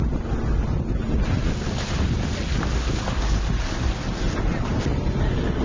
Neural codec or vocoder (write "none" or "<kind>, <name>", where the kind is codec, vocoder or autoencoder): none